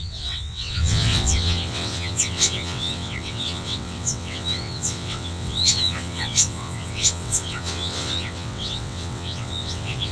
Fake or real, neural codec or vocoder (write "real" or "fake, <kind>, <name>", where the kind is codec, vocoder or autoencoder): fake, vocoder, WaveNeXt